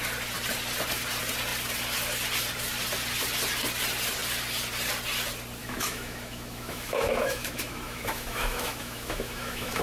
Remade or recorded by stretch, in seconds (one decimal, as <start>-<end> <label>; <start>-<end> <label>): 0.0-5.6 recorded; 5.6-9.8 remade